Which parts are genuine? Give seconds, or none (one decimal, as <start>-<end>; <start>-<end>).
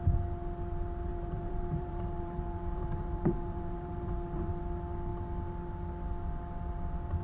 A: 0.0-1.1; 4.5-7.2